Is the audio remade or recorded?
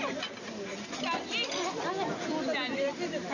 recorded